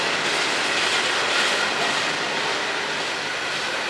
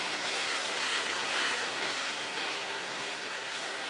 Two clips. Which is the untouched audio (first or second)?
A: first